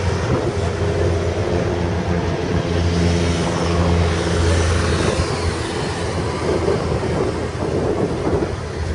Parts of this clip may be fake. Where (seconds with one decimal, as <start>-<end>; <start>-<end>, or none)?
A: 1.4-2.6